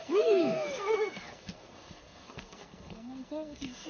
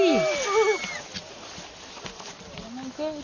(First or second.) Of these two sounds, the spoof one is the first